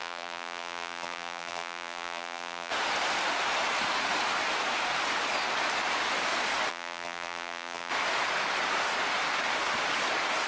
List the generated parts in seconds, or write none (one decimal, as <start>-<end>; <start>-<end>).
0.0-2.7; 6.7-7.9